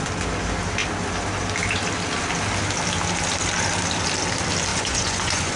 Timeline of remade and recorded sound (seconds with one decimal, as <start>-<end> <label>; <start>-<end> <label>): 0.0-4.7 recorded; 4.7-5.6 remade